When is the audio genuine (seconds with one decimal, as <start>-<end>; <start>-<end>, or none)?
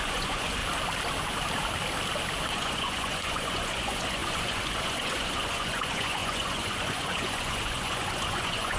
0.6-2.5